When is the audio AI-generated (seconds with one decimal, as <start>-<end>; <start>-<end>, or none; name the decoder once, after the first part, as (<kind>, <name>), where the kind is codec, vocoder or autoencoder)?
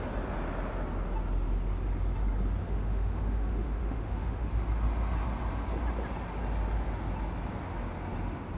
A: 2.6-4.5 (autoencoder, DAC-VAE)